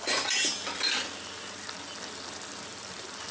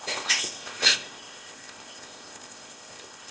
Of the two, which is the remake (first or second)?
second